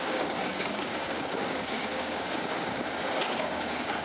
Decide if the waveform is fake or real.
fake